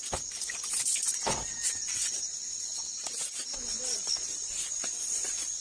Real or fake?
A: real